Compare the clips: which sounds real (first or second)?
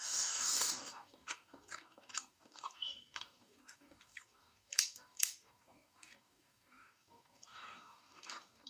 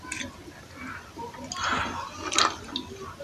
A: second